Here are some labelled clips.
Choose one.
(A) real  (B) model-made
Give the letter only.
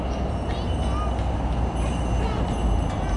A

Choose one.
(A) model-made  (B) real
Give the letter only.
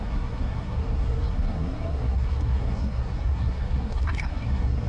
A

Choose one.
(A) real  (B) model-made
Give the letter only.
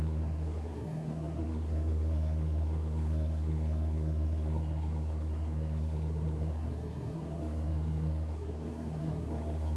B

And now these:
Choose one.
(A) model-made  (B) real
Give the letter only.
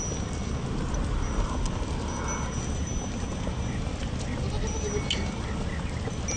B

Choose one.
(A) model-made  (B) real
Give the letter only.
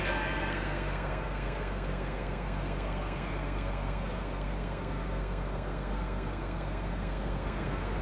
A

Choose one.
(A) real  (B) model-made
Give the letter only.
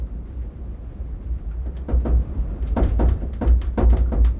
A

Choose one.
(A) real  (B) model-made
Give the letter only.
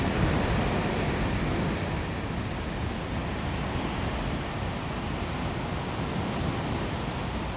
A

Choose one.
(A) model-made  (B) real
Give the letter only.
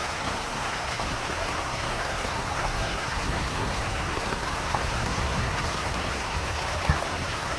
A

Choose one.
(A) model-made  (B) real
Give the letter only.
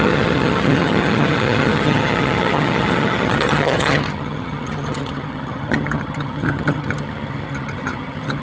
A